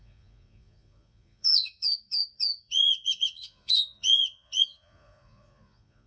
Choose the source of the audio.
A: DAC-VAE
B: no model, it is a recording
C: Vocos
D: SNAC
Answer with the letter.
C